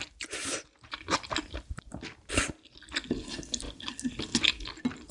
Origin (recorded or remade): recorded